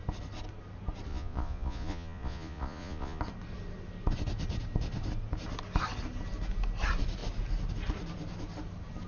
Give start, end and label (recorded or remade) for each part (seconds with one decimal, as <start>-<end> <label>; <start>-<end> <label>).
0.0-1.1 recorded; 1.1-3.2 remade; 3.2-9.1 recorded